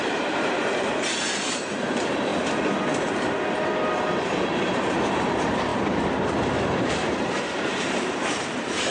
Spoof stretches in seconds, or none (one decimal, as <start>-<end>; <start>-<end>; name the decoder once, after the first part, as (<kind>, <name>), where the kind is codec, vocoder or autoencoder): 0.0-2.3 (vocoder, BigVGAN v2); 3.0-8.9